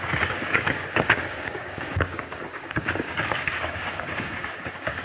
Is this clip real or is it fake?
fake